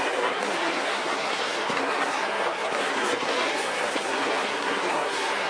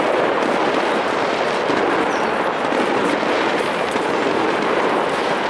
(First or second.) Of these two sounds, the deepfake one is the first